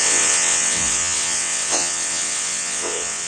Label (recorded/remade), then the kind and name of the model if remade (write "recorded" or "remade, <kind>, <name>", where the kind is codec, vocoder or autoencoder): remade, vocoder, WaveNeXt